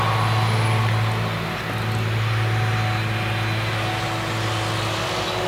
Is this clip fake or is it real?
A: real